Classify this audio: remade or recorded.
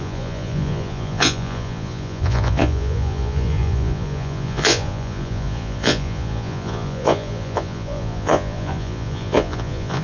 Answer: remade